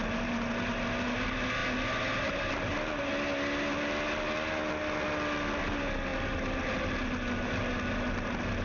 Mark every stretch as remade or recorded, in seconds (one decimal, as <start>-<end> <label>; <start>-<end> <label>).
0.0-8.6 recorded